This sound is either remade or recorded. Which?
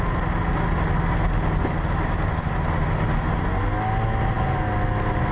recorded